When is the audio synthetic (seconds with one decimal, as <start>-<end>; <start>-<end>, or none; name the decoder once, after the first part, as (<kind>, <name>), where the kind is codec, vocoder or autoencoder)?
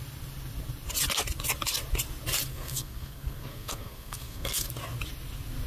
2.5-4.7 (codec, SNAC)